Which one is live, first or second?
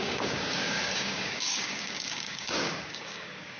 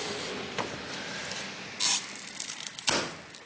second